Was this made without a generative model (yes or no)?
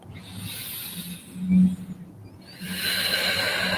yes